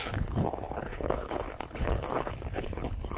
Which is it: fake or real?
fake